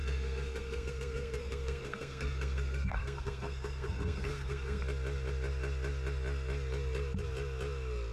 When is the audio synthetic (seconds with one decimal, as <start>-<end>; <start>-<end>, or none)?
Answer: 0.0-4.8